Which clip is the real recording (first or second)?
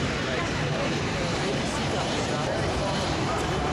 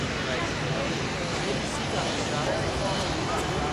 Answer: second